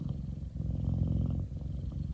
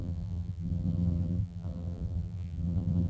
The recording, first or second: first